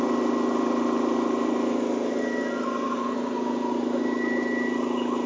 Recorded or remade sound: recorded